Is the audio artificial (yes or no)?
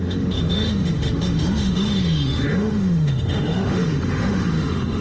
yes